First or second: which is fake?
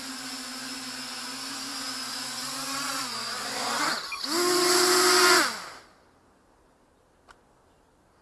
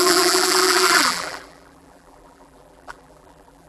second